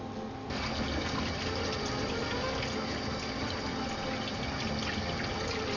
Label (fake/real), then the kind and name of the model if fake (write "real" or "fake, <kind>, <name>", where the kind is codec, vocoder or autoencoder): real